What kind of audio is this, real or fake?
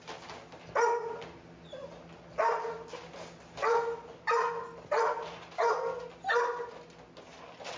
real